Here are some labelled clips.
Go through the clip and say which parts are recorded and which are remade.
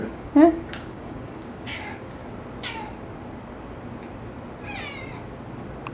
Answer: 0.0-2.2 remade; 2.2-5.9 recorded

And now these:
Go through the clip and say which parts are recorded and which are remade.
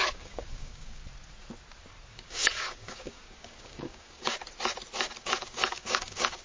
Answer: 0.0-1.0 remade; 1.0-2.1 recorded; 2.1-4.4 remade; 4.4-5.2 recorded; 5.2-6.4 remade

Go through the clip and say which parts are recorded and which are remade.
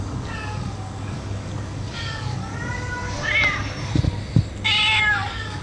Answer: 0.0-2.5 remade; 2.5-5.0 recorded; 5.0-5.6 remade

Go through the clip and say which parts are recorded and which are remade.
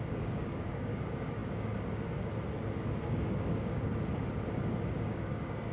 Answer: 0.0-2.3 remade; 2.3-2.9 recorded; 2.9-3.9 remade; 3.9-5.0 recorded; 5.0-5.7 remade